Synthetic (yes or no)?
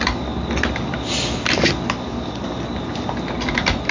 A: no